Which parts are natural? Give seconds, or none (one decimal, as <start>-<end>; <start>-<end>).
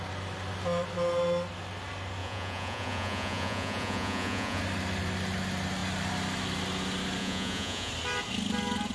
0.0-2.2; 4.6-7.2; 7.9-8.9